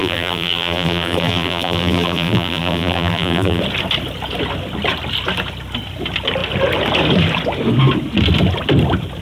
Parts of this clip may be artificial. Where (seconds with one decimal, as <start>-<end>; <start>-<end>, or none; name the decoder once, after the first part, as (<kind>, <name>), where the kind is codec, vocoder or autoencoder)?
0.0-3.6 (vocoder, BigVGAN v2)